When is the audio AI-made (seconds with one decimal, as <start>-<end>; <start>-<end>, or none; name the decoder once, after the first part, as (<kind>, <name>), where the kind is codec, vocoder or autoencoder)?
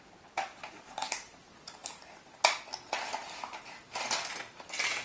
none